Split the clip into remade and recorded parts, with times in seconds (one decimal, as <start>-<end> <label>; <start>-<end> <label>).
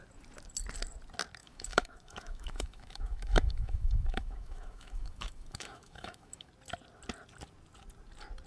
0.0-1.4 recorded; 1.4-6.5 remade; 6.5-8.5 recorded